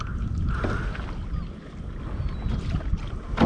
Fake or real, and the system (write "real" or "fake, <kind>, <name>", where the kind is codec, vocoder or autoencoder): real